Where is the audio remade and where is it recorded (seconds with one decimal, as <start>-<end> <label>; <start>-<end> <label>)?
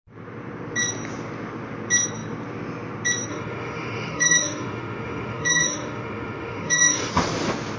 0.0-3.3 recorded; 3.3-7.1 remade; 7.1-7.8 recorded